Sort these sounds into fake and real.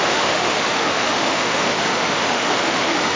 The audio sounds fake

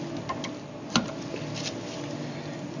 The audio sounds real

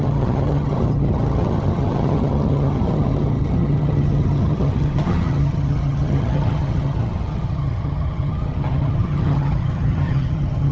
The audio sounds fake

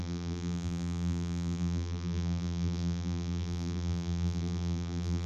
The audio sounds fake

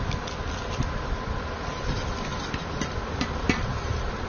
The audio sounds real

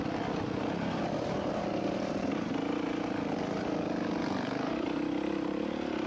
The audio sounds real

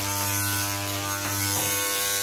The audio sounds fake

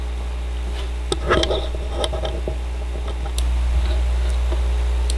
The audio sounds real